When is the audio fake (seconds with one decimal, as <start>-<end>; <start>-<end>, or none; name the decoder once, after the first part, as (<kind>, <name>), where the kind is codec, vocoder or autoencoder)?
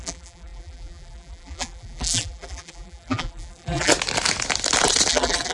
0.0-3.9 (vocoder, BigVGAN v2); 5.1-5.5